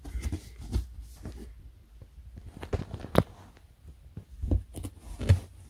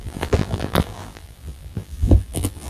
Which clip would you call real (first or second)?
first